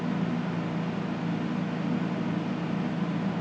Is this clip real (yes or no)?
yes